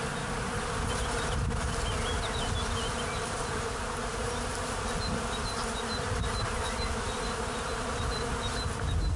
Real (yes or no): yes